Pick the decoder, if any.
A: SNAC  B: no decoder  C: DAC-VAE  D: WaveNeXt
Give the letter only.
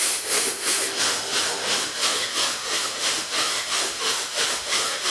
C